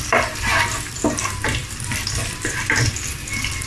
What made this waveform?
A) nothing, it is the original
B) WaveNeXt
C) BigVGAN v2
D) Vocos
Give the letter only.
A